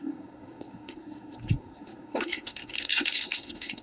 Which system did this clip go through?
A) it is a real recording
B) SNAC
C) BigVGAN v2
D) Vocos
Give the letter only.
B